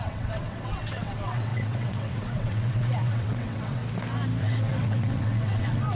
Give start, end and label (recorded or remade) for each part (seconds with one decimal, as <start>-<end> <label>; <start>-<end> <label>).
0.0-3.8 remade; 3.8-4.4 recorded; 4.4-5.9 remade

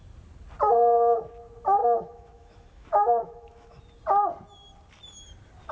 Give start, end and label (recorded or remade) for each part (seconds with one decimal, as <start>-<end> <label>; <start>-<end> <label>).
0.0-1.8 recorded; 1.8-3.8 remade; 3.8-5.7 recorded